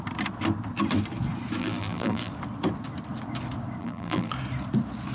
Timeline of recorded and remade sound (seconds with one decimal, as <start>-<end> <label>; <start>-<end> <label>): 0.0-1.6 recorded; 1.6-2.3 remade; 2.3-3.8 recorded; 3.8-4.3 remade; 4.3-5.1 recorded